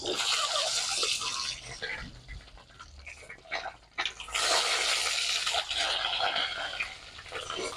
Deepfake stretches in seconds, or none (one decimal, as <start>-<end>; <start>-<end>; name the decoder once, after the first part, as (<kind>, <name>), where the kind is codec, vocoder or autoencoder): 0.0-0.7 (vocoder, BigVGAN v2)